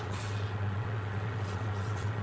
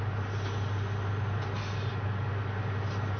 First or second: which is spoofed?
first